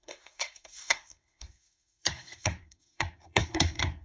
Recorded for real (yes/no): no